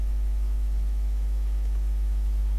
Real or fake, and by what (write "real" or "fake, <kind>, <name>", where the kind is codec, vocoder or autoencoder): fake, autoencoder, DAC-VAE